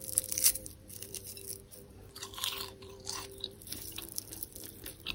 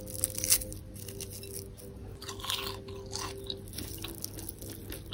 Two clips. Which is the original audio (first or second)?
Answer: second